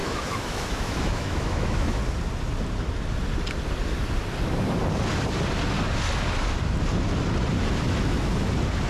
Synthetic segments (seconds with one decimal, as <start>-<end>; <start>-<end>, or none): 0.0-2.0